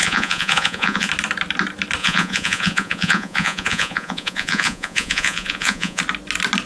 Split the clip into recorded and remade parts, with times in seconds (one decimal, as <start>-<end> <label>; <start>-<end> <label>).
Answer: 0.0-1.1 remade; 1.1-2.0 recorded; 2.0-6.0 remade; 6.0-6.7 recorded